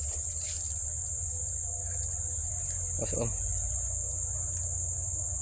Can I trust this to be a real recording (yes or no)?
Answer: yes